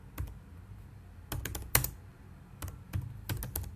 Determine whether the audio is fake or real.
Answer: real